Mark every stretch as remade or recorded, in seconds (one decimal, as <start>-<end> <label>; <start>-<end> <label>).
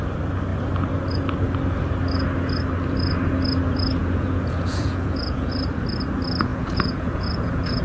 0.0-4.0 recorded; 4.0-5.6 remade; 5.6-6.5 recorded; 6.5-7.8 remade